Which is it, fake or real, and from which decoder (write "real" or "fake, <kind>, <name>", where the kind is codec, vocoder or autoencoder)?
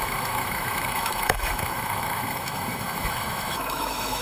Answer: fake, autoencoder, DAC-VAE